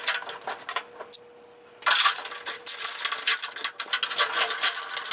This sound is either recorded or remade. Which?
recorded